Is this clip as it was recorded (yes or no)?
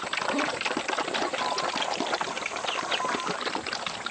yes